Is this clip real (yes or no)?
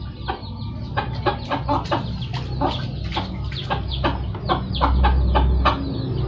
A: yes